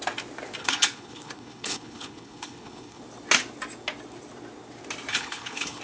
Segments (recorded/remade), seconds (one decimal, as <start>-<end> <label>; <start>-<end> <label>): 0.0-0.6 recorded; 0.6-3.0 remade; 3.0-5.1 recorded; 5.1-5.8 remade